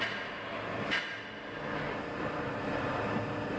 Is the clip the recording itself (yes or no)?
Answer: yes